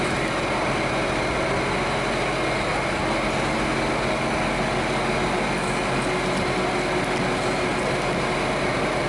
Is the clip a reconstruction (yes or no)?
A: no